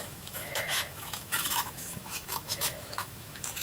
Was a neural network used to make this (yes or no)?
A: yes